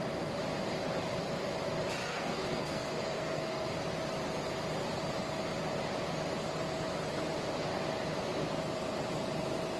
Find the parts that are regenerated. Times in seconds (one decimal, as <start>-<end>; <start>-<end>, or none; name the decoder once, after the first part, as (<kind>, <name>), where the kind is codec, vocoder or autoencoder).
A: 2.0-3.7 (codec, SNAC)